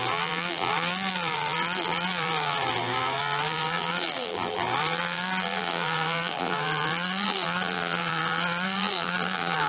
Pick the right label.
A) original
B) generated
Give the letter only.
B